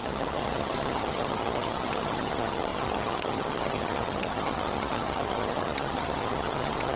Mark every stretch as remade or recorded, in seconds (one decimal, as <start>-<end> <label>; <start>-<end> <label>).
0.0-7.0 remade